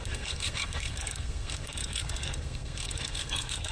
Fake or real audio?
fake